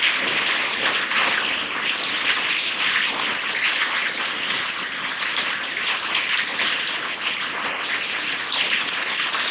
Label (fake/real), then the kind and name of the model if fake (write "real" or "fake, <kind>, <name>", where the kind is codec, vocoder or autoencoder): real